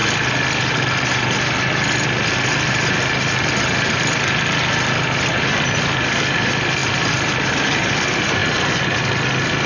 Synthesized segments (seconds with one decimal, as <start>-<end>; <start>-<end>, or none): none